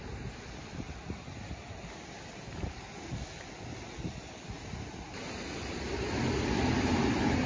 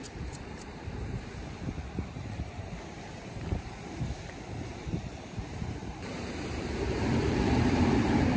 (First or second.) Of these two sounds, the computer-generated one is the second